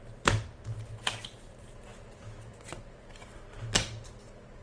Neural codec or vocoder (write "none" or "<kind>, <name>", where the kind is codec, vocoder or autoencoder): none